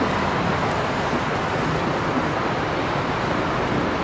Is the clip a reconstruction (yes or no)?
no